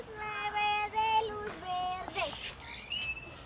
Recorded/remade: recorded